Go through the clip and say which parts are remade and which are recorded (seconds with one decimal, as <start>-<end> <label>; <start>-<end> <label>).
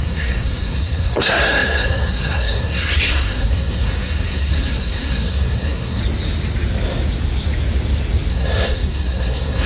0.0-6.0 remade; 6.0-8.3 recorded; 8.3-9.7 remade